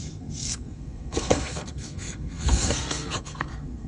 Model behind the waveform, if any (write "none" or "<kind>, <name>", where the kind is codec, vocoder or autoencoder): codec, SNAC